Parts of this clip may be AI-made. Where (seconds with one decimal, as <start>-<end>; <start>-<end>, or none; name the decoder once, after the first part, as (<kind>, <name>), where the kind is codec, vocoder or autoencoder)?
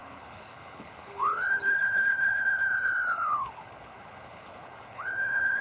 0.0-5.6 (codec, HILCodec)